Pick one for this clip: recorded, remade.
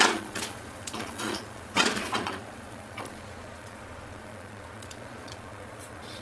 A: remade